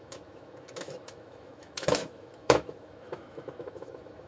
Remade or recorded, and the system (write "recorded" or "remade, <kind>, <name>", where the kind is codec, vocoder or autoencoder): remade, autoencoder, DAC-VAE